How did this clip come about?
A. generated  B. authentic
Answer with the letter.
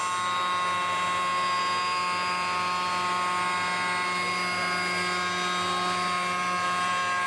B